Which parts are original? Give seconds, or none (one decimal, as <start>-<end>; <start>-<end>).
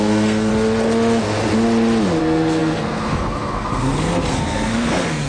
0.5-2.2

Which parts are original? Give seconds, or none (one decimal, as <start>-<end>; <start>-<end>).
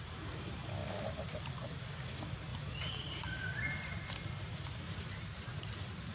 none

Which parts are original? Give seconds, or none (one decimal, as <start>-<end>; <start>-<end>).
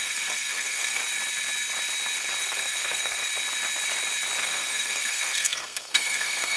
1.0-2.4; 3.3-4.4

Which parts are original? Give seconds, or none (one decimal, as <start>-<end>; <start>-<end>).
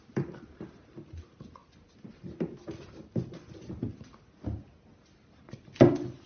0.0-6.3